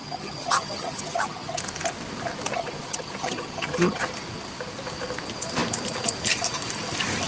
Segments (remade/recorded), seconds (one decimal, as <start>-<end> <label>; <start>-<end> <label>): 0.0-1.6 remade; 1.6-2.5 recorded; 2.5-4.1 remade; 4.1-7.3 recorded